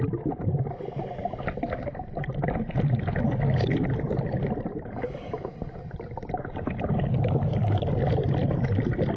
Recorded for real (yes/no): yes